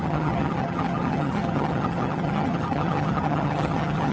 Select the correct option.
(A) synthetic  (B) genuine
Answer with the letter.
A